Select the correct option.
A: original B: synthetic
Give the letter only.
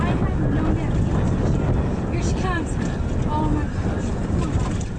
A